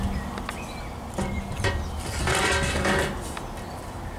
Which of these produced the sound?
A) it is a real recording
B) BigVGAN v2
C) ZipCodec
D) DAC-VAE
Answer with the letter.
A